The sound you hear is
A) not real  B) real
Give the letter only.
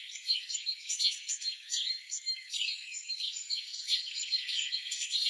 A